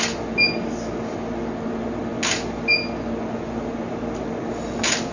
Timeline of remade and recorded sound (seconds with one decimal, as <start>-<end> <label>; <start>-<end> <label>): 0.0-5.1 recorded